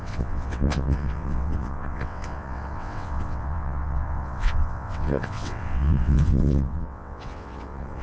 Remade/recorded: remade